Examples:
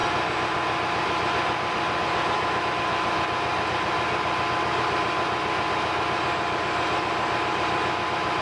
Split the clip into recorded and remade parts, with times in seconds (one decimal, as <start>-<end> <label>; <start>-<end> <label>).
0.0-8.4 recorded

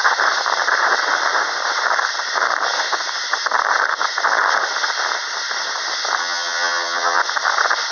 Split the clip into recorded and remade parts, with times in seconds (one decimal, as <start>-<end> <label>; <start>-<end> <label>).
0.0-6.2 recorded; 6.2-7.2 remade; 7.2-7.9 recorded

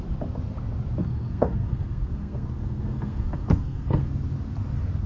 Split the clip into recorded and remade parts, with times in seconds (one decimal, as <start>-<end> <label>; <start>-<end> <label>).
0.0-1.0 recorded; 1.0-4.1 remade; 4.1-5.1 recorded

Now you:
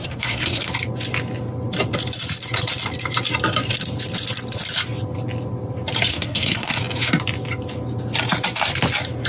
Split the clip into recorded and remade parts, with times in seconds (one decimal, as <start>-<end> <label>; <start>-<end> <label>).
0.0-0.7 remade; 0.7-6.1 recorded; 6.1-6.8 remade; 6.8-9.3 recorded

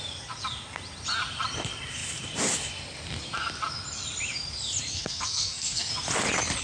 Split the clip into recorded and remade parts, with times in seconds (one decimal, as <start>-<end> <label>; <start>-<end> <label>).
0.0-4.9 recorded; 4.9-5.9 remade; 5.9-6.6 recorded